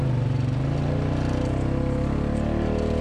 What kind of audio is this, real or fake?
real